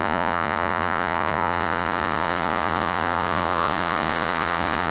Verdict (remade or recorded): remade